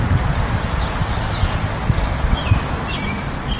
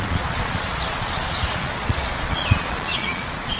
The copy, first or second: second